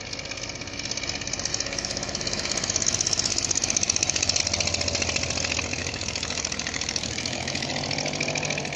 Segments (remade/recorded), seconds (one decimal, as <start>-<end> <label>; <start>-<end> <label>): 0.0-1.5 recorded; 1.5-4.4 remade; 4.4-5.8 recorded; 5.8-7.7 remade; 7.7-8.8 recorded